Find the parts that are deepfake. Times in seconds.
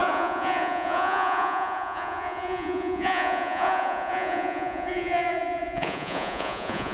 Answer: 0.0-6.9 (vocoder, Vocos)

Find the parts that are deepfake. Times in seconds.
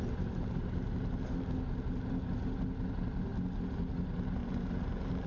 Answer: none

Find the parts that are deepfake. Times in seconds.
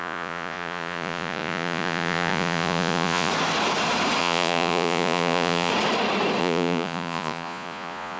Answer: 0.0-3.3 (vocoder, Vocos); 4.2-5.7; 6.4-8.2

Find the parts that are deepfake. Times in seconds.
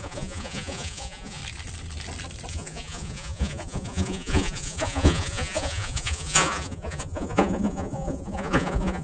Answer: 0.0-1.4 (vocoder, Vocos); 2.5-9.0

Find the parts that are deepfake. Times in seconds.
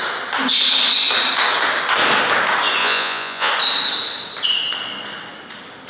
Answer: 2.8-3.5 (vocoder, Vocos)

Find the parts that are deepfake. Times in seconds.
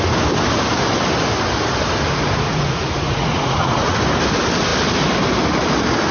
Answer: 2.5-4.0 (vocoder, Vocos)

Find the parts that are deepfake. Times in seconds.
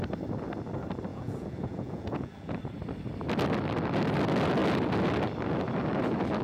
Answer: 1.1-2.6 (vocoder, Vocos)